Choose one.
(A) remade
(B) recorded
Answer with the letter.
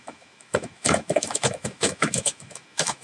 A